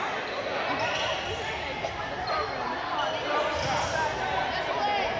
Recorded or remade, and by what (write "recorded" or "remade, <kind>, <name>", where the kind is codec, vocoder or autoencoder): recorded